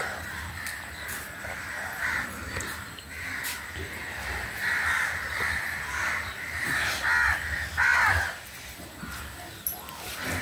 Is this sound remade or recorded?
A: recorded